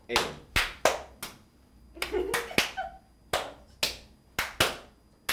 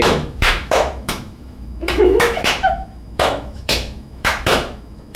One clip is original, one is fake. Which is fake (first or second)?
second